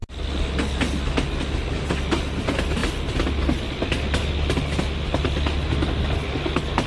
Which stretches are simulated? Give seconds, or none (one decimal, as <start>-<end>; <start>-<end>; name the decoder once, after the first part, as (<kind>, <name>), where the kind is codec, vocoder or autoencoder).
none